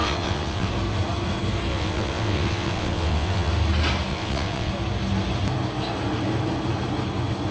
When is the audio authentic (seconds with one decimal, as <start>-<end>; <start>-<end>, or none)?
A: 0.7-1.7; 3.5-4.1; 4.7-7.5